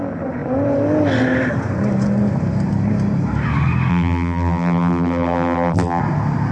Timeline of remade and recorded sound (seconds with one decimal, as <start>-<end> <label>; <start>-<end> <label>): 0.0-3.9 recorded; 3.9-6.0 remade; 6.0-6.5 recorded